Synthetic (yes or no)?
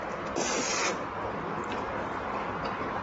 no